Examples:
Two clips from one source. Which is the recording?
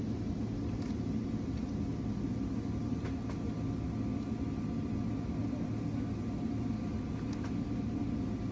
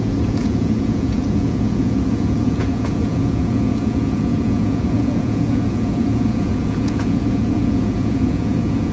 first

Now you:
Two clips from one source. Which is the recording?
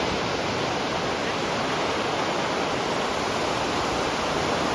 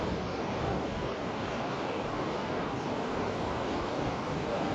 first